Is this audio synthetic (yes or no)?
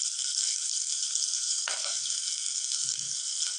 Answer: yes